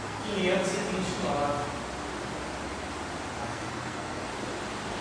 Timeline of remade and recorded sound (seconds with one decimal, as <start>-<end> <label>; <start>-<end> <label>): 0.0-0.4 remade; 0.4-3.4 recorded; 3.4-4.3 remade; 4.3-5.0 recorded